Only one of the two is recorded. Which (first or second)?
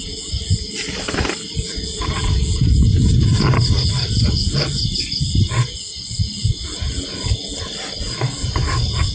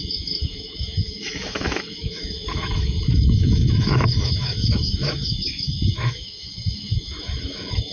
first